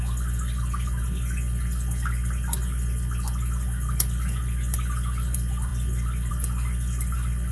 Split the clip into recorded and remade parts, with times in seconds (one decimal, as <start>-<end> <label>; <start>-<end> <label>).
0.0-5.7 remade; 5.7-6.3 recorded; 6.3-7.5 remade